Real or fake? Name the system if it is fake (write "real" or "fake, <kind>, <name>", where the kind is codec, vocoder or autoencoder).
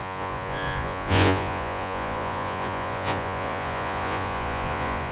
fake, vocoder, Vocos